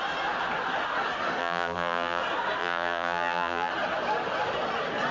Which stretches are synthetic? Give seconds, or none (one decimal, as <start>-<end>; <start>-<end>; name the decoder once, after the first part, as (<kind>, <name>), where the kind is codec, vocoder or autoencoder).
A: 1.4-2.2 (vocoder, BigVGAN v2); 2.6-3.7